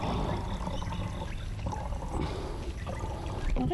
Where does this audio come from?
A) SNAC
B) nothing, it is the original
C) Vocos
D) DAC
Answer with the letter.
B